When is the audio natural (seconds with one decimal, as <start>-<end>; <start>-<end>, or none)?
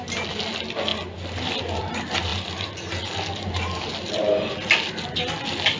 0.0-5.8